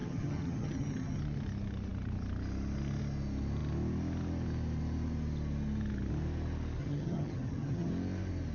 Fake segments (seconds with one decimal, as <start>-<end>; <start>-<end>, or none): 0.0-1.2; 6.8-7.9